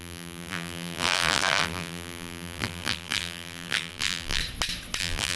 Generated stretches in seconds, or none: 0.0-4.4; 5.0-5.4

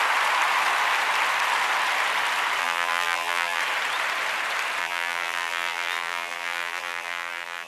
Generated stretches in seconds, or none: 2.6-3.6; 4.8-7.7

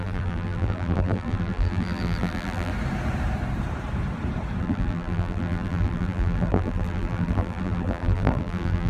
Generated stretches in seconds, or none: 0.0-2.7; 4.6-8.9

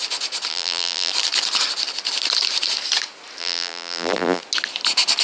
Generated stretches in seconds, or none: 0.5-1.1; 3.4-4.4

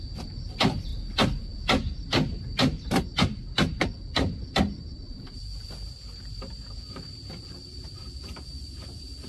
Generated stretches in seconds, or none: 0.0-0.9; 1.4-9.3

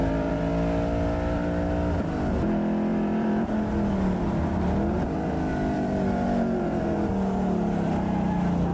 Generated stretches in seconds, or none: 0.0-0.5; 2.9-3.5; 5.5-7.1

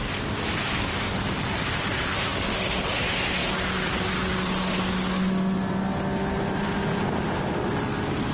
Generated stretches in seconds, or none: 0.0-1.3